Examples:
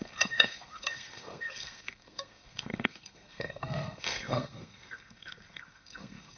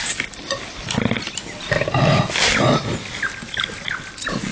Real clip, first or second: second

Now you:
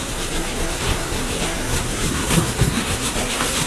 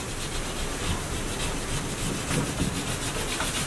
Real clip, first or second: second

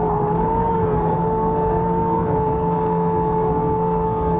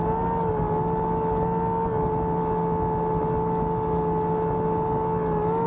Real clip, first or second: second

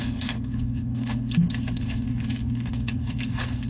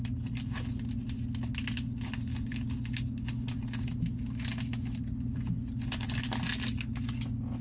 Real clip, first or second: second